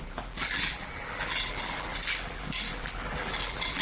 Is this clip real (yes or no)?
no